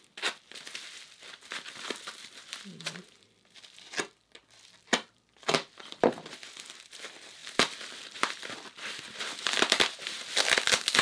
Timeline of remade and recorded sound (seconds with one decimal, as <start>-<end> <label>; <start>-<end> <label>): 0.0-11.0 remade